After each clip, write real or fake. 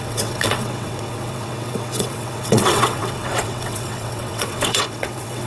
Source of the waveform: fake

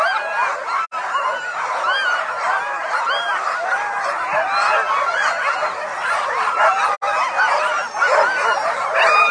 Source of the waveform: real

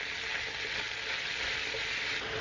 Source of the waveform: real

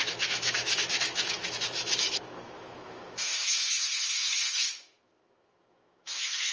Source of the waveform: fake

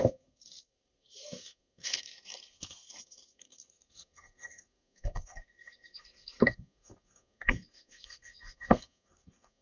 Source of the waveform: fake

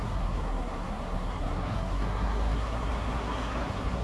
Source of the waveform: fake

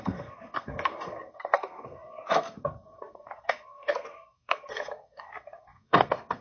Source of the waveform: fake